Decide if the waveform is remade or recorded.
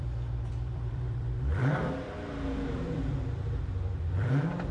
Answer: remade